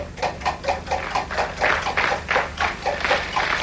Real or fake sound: real